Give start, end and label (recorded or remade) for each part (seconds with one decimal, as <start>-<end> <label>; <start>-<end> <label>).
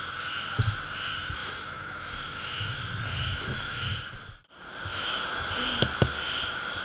0.0-1.4 recorded; 1.4-2.8 remade; 2.8-3.3 recorded; 3.3-3.9 remade; 3.9-4.9 recorded; 4.9-5.5 remade; 5.5-6.8 recorded